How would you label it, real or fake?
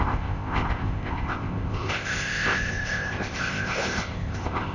fake